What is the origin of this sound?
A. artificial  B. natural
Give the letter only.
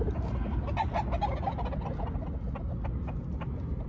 B